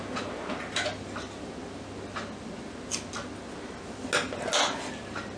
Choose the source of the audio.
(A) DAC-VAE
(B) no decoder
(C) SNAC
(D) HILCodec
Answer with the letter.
B